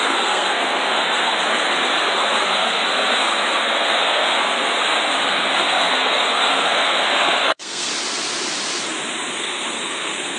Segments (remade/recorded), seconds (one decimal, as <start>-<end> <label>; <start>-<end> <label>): 0.0-7.9 remade; 7.9-9.3 recorded; 9.3-10.4 remade